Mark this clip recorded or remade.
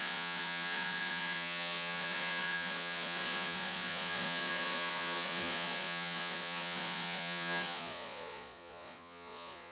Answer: remade